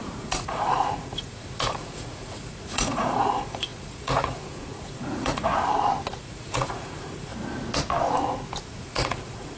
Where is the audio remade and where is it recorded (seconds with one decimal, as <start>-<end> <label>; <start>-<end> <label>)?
0.0-5.5 remade; 5.5-6.2 recorded; 6.2-7.3 remade; 7.3-8.6 recorded; 8.6-9.6 remade